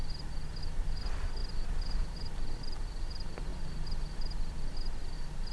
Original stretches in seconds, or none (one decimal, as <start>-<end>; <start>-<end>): 0.0-5.5